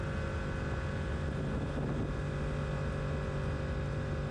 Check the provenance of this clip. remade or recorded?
recorded